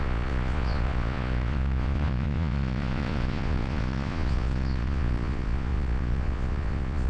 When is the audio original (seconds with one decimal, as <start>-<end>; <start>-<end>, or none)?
none